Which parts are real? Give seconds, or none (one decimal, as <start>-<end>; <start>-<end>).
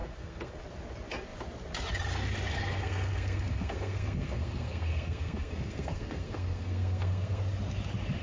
0.6-2.5; 7.4-8.2